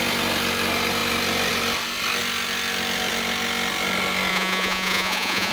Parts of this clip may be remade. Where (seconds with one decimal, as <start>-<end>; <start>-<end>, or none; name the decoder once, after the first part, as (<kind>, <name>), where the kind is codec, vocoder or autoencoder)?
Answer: 4.3-5.5 (vocoder, Vocos)